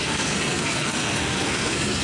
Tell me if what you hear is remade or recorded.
remade